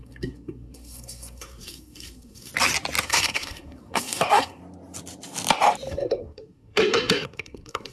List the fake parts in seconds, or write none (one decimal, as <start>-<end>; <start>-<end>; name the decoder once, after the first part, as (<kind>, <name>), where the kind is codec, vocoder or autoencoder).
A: 0.0-2.5 (codec, SNAC); 3.0-4.6; 5.9-7.9